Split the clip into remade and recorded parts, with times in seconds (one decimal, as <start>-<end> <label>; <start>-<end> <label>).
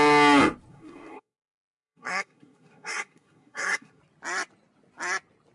0.0-0.7 recorded; 0.7-4.0 remade; 4.0-5.5 recorded